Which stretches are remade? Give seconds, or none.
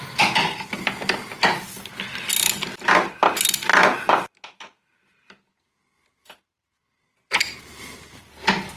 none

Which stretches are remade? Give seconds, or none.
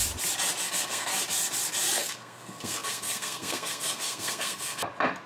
0.7-1.1 (codec, SNAC); 2.0-4.8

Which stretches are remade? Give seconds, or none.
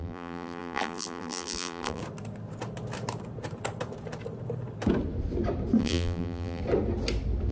0.0-2.0 (vocoder, BigVGAN v2); 5.8-6.6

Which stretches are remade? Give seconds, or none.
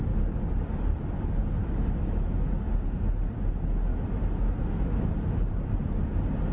1.6-2.7 (autoencoder, DAC-VAE); 3.9-5.1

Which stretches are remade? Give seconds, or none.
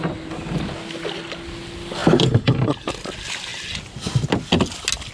none